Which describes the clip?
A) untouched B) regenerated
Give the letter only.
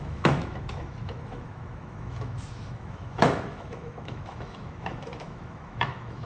B